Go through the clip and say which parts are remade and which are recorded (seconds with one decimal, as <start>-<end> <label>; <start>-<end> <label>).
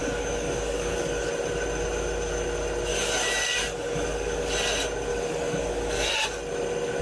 0.0-1.3 remade; 1.3-2.9 recorded; 2.9-4.5 remade; 4.5-5.1 recorded; 5.1-6.1 remade; 6.1-7.0 recorded